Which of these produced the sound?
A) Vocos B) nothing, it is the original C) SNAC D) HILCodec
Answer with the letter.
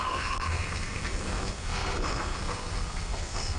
C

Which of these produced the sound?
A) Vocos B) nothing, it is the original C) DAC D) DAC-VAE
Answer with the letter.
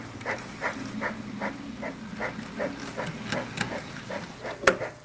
B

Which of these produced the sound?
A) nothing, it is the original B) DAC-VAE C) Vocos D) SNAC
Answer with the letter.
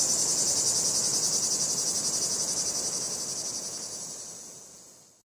A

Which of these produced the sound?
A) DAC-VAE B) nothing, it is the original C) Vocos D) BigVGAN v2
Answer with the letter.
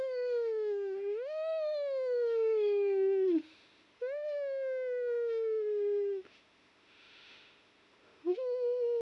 A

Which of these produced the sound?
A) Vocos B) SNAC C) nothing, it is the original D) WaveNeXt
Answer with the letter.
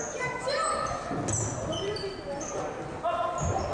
C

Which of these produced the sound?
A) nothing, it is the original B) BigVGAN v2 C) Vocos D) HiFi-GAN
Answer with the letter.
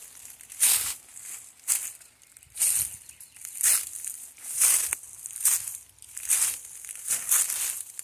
A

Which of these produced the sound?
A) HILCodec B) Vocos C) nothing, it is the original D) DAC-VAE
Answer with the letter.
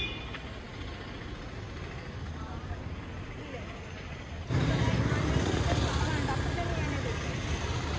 C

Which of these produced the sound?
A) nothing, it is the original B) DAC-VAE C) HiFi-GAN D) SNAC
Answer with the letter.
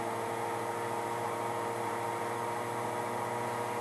A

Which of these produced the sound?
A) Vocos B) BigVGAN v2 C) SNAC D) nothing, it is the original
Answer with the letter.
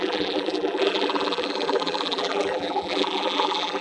B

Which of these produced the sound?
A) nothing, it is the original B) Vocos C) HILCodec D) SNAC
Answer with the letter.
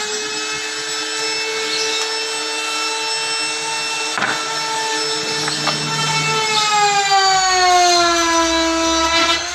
A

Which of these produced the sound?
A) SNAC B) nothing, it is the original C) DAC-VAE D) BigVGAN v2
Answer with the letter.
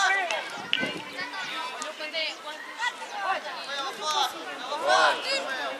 B